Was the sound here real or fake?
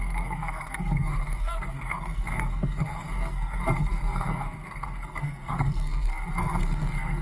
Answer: fake